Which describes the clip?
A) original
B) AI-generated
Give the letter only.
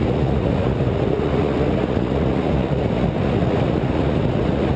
B